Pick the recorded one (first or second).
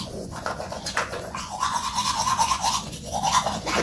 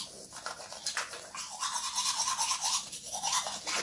second